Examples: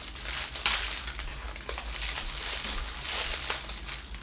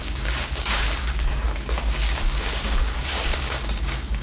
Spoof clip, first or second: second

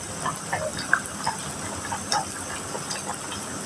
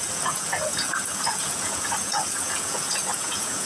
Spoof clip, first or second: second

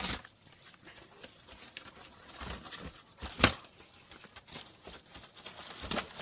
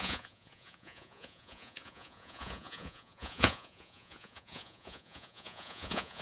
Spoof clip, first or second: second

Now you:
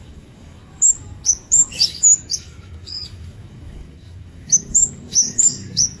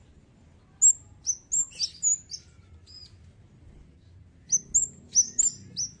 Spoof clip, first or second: first